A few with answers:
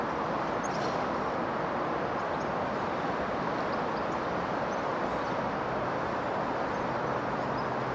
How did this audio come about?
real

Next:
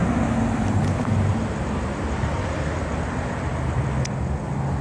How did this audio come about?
real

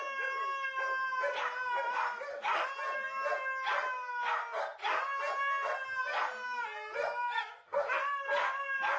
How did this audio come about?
real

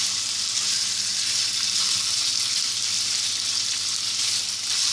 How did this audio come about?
real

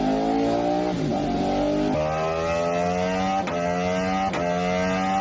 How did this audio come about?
real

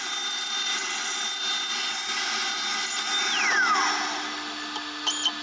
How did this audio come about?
real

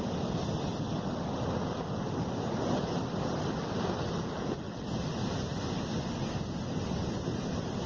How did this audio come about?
real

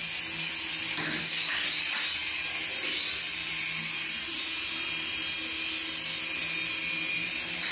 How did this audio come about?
real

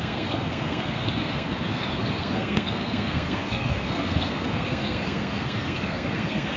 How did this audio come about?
fake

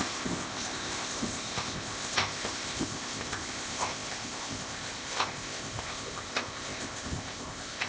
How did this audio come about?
fake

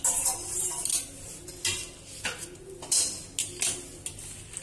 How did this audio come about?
real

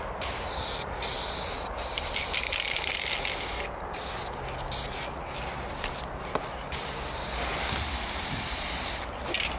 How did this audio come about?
real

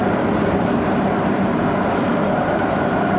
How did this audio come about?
fake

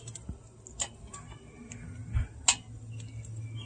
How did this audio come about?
real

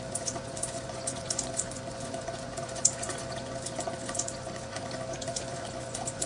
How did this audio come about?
fake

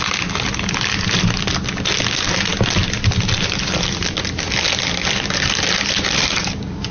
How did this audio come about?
real